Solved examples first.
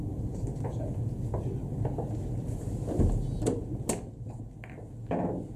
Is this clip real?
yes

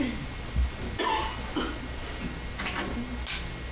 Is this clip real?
yes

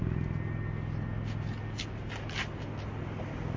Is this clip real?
yes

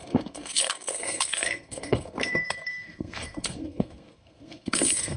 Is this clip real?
no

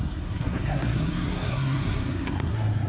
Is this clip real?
no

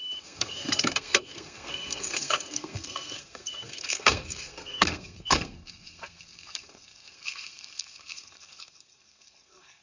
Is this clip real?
no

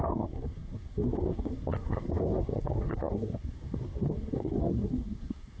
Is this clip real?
no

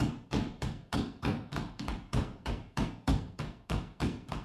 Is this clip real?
no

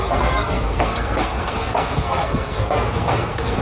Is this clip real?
no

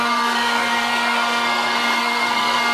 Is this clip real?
no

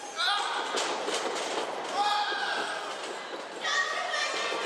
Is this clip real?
yes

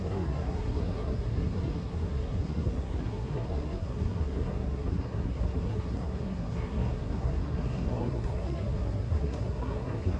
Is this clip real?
no